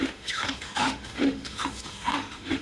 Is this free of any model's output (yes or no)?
no